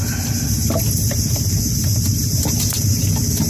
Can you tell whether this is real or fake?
real